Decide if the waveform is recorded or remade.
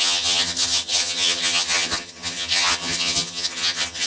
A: remade